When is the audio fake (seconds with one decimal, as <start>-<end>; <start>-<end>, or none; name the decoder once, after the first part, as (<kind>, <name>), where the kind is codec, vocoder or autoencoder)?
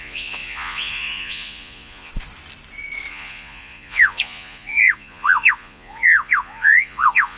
0.0-2.1 (vocoder, Vocos); 3.1-7.4